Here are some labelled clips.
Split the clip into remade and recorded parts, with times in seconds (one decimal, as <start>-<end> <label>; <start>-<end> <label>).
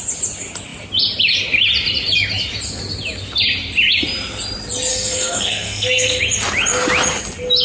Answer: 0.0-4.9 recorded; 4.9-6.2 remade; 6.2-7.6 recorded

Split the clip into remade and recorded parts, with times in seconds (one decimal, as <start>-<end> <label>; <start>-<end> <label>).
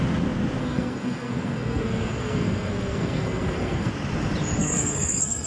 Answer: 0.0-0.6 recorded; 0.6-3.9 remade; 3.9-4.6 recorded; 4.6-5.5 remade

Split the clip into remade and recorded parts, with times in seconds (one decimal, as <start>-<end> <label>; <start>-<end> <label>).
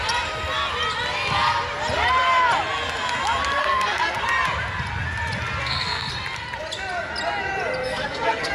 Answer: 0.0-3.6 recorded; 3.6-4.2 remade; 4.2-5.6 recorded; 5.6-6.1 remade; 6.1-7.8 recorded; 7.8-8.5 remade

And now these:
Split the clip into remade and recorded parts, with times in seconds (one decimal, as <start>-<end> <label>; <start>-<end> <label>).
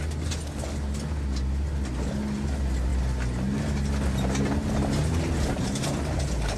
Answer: 0.0-6.6 recorded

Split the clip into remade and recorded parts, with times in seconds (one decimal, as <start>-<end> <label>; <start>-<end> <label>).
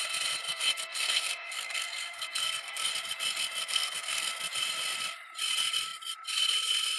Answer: 0.0-0.5 recorded; 0.5-2.9 remade; 2.9-3.6 recorded; 3.6-4.3 remade; 4.3-7.0 recorded